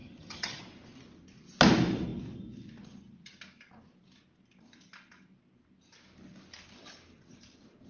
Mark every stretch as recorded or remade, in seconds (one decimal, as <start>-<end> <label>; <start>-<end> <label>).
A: 0.0-0.6 remade; 0.6-7.9 recorded